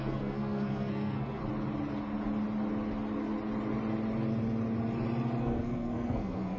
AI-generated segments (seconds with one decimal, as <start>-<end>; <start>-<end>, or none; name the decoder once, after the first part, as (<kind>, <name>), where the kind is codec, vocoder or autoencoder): 0.0-1.4 (codec, SNAC); 5.4-6.6